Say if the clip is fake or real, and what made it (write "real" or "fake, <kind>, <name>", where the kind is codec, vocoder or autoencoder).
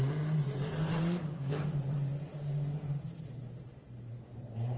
fake, vocoder, BigVGAN v2